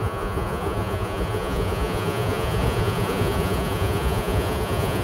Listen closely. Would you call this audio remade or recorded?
remade